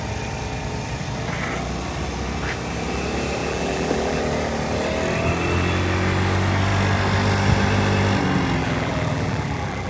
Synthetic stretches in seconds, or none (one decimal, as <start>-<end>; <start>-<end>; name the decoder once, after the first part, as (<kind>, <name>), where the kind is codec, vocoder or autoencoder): 3.4-4.2 (vocoder, BigVGAN v2); 8.6-9.9